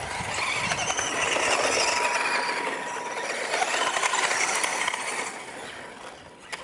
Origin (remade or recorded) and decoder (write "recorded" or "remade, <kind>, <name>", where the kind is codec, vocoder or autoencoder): recorded